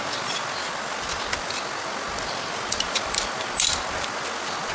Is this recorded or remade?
recorded